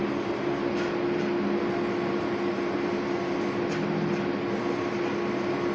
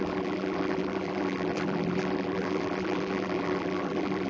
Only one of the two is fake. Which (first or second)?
second